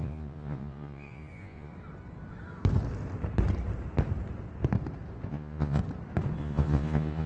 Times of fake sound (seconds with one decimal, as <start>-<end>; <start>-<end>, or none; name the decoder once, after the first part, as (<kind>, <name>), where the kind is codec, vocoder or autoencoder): 0.0-1.7 (vocoder, Vocos); 5.3-5.8; 6.4-7.3